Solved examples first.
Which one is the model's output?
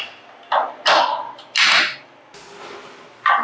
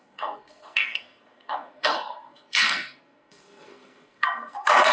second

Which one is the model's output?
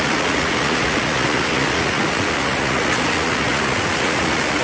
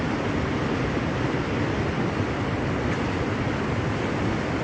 first